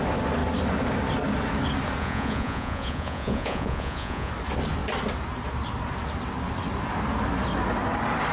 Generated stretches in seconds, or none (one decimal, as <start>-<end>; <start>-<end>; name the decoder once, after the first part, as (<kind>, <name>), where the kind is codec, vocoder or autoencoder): 2.0-4.3 (vocoder, Vocos)